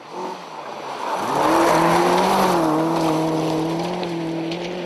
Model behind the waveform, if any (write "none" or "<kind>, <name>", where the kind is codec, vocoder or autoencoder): none